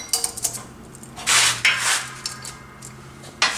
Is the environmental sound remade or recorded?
recorded